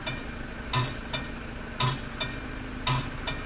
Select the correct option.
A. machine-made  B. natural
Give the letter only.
B